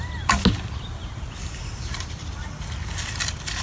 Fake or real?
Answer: real